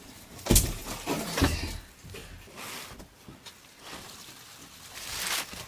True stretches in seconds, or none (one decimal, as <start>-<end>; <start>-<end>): 2.2-5.7